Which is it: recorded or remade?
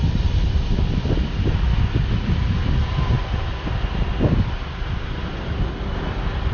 recorded